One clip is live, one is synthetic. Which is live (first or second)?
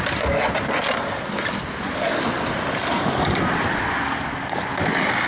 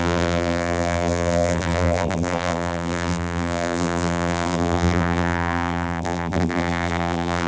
first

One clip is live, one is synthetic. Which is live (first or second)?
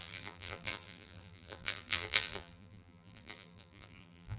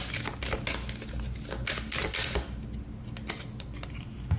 second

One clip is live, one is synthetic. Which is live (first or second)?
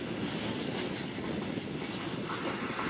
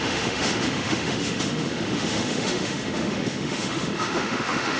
first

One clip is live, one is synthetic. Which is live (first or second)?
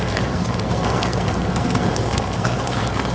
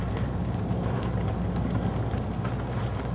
second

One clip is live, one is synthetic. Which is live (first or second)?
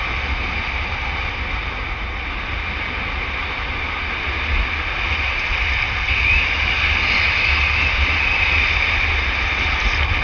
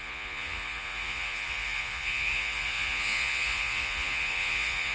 first